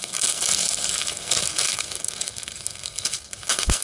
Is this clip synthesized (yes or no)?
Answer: yes